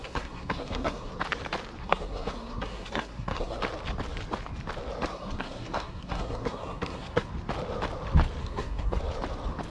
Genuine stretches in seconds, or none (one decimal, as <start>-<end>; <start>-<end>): 1.1-1.8; 3.6-5.1; 7.3-8.4; 9.0-9.7